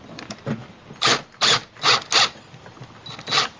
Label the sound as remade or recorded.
recorded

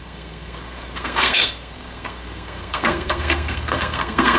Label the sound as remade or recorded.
remade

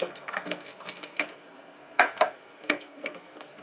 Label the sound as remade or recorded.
remade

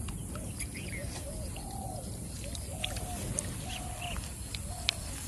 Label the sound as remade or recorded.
recorded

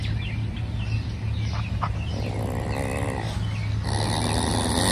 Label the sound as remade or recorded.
recorded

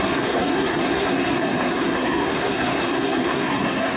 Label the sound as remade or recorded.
remade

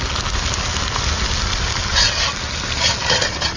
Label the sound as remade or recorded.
recorded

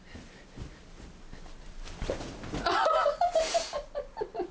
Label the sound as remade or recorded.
recorded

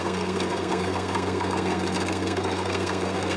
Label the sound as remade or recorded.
remade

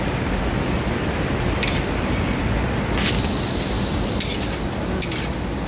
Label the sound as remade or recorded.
recorded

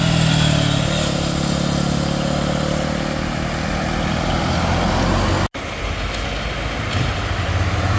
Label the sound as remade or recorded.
recorded